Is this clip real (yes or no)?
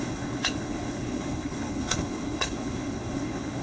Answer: no